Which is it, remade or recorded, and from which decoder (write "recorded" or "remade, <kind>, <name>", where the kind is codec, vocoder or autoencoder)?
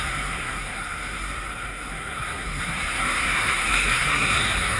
remade, codec, SNAC